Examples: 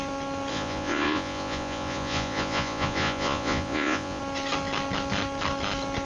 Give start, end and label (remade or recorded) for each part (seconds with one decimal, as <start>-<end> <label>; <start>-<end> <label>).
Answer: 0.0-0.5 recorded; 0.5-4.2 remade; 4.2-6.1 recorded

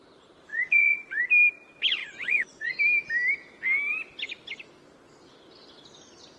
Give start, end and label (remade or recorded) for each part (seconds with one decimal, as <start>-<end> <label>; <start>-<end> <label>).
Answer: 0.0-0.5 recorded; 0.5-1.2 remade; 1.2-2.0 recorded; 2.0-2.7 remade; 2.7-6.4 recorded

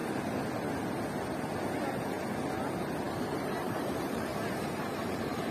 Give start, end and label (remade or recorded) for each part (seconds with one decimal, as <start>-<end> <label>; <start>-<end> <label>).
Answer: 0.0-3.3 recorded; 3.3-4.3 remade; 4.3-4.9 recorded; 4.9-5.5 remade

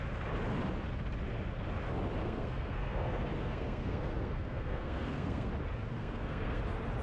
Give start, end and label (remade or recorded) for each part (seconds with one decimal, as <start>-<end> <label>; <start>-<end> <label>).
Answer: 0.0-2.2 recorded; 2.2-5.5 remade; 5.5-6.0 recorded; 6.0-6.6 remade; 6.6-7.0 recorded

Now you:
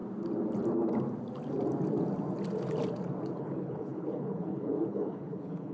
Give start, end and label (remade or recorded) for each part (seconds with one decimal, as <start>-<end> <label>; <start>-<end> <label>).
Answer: 0.0-3.4 recorded; 3.4-5.7 remade